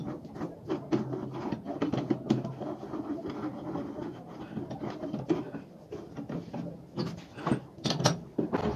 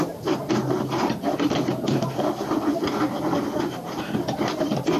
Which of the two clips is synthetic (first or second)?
second